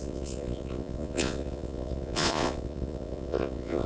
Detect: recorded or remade remade